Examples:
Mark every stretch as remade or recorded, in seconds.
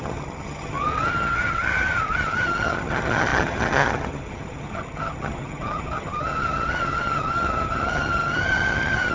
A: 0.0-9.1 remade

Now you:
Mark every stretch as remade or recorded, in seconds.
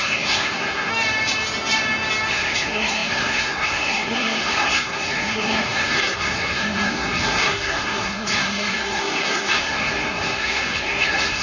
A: 0.0-0.9 remade; 0.9-2.3 recorded; 2.3-11.4 remade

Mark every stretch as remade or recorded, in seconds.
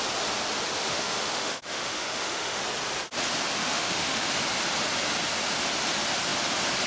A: 0.0-0.8 recorded; 0.8-2.6 remade; 2.6-3.6 recorded; 3.6-4.3 remade; 4.3-6.9 recorded